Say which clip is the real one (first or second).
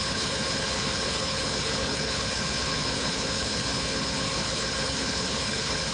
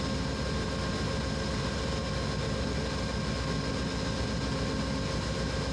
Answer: second